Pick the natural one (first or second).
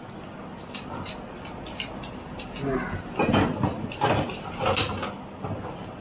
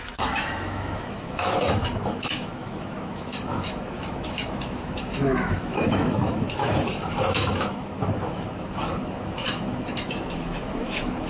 first